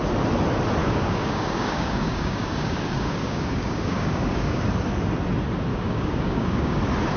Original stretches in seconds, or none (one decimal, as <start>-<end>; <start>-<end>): 0.0-0.8; 4.6-5.7; 6.8-7.2